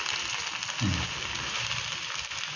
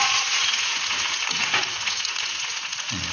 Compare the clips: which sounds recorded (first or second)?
first